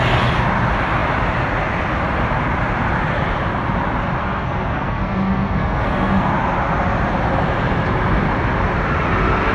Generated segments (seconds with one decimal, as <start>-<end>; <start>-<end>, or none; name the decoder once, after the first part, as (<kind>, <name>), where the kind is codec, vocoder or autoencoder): 4.2-6.3 (codec, SNAC)